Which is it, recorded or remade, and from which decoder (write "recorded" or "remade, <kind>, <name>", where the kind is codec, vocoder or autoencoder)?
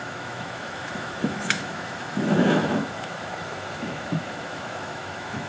remade, autoencoder, DAC-VAE